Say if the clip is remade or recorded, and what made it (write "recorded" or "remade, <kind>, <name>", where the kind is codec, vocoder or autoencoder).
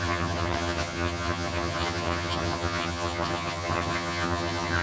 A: remade, vocoder, HiFi-GAN